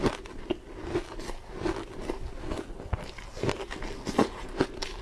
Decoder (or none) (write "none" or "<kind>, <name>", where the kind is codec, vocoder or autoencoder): none